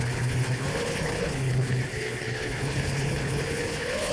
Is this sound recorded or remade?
remade